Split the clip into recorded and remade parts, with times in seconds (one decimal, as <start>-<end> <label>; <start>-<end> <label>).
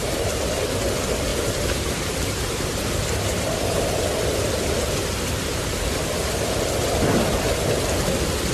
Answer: 0.0-1.3 recorded; 1.3-3.0 remade; 3.0-5.0 recorded; 5.0-6.6 remade; 6.6-8.5 recorded